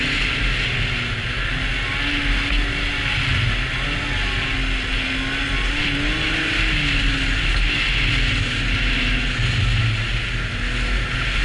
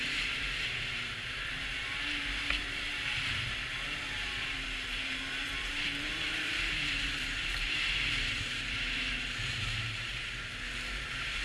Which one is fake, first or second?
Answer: second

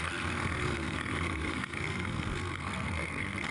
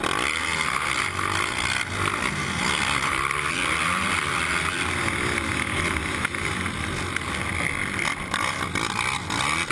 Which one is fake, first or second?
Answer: first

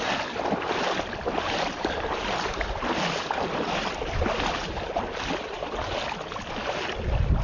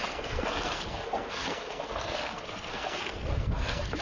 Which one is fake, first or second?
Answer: second